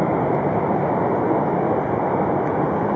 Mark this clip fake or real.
real